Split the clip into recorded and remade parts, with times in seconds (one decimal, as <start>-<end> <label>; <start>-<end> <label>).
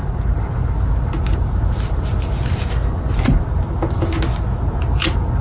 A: 0.0-1.3 recorded; 1.3-2.5 remade; 2.5-5.4 recorded